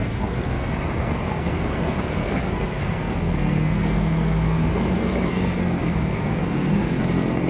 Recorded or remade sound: remade